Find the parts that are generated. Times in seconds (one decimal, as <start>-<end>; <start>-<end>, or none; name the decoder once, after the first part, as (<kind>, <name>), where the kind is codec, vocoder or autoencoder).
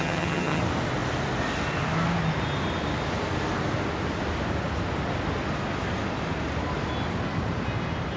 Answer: 0.0-0.6 (vocoder, HiFi-GAN)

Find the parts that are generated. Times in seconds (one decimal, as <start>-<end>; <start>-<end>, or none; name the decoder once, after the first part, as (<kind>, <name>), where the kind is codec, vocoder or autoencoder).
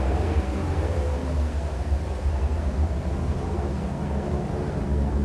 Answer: 0.0-5.2 (codec, SNAC)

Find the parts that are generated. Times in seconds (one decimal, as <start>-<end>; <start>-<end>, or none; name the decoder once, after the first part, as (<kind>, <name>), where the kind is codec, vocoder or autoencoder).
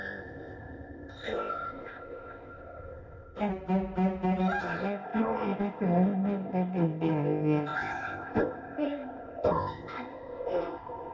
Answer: 0.0-3.5 (codec, ZipCodec); 4.6-11.1